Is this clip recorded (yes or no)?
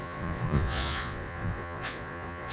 no